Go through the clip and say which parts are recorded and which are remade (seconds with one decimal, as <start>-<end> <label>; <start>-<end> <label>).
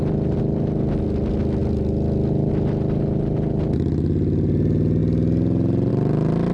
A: 0.0-6.5 recorded